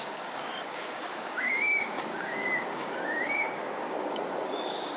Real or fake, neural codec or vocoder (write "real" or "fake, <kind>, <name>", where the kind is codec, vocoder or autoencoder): fake, codec, DAC